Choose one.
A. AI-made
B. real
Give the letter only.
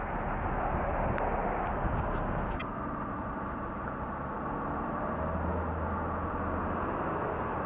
B